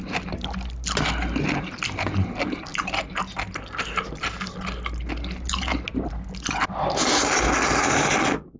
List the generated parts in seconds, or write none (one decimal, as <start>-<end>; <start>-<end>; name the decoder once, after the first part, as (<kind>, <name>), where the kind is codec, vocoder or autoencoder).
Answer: none